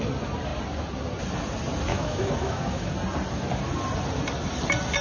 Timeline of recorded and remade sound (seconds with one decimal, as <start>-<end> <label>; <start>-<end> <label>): 0.0-1.9 recorded; 1.9-2.9 remade; 2.9-5.0 recorded